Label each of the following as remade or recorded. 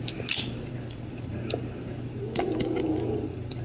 recorded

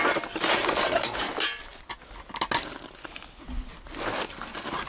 recorded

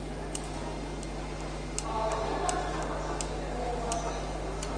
recorded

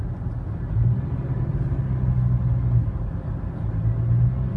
recorded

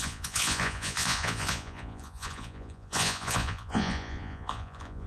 remade